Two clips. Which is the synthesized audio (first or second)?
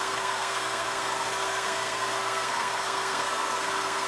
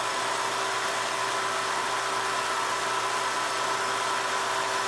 first